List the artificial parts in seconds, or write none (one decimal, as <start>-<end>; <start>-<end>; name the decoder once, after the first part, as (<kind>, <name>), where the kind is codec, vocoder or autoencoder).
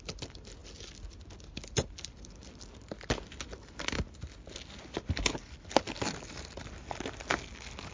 none